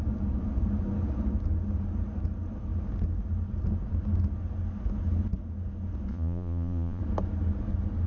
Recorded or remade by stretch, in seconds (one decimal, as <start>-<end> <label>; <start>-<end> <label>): 0.0-6.1 recorded; 6.1-7.0 remade; 7.0-8.1 recorded